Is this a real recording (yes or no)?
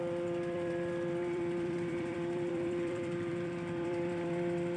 no